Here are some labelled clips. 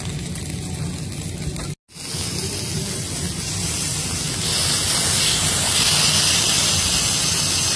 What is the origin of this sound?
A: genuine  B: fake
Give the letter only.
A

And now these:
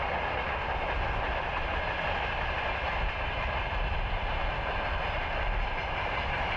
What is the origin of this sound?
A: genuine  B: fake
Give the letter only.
A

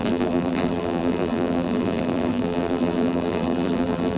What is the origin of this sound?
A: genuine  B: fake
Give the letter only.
B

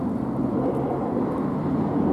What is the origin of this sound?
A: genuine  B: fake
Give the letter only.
B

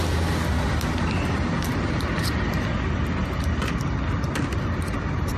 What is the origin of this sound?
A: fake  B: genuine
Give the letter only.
B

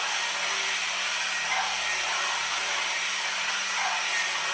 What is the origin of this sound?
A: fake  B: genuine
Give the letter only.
B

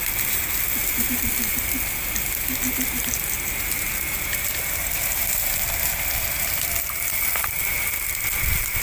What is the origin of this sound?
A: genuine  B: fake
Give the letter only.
A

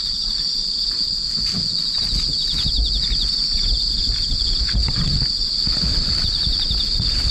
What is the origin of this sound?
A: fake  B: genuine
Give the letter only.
B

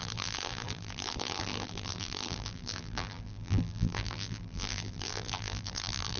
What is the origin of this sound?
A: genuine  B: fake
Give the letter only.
B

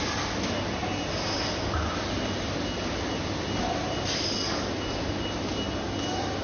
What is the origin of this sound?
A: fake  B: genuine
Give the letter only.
B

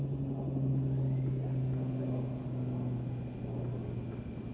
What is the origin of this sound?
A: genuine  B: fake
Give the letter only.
A